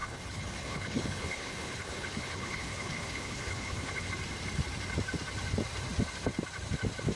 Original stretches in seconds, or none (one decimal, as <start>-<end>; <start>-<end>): 4.1-7.2